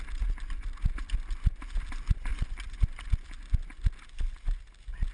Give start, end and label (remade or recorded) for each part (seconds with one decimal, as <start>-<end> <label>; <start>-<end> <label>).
0.0-5.1 recorded